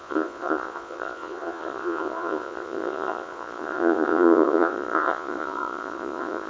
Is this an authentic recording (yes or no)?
no